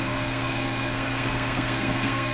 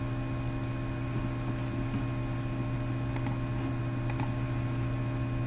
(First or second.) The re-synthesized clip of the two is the first